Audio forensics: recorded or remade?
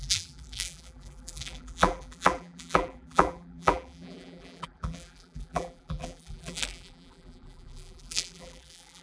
remade